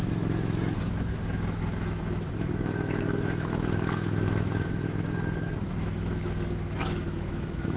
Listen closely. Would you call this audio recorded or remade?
remade